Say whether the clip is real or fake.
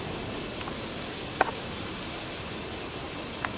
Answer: real